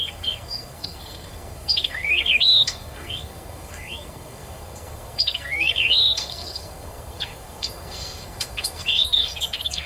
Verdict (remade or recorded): remade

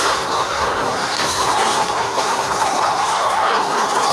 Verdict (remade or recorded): remade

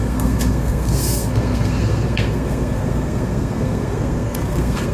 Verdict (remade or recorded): remade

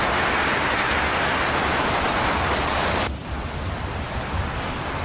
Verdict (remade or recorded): recorded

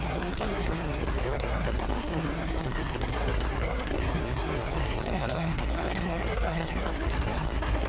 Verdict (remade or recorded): remade